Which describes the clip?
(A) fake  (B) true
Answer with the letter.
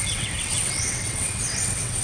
A